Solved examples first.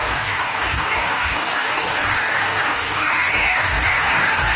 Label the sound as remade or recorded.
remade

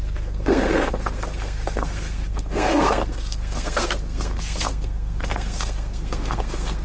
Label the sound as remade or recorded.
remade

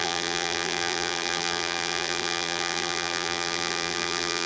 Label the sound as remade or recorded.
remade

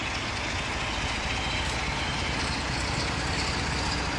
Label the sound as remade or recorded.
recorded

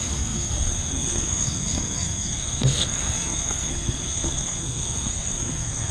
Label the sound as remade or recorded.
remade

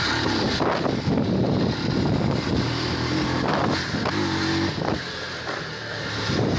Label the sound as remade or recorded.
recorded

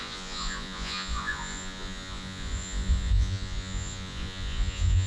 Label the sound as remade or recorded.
remade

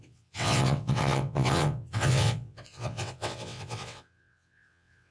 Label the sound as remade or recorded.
remade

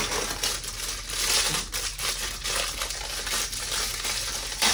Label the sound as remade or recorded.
recorded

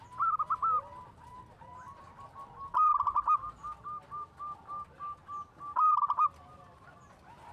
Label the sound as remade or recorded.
recorded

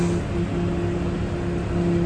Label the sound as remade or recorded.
recorded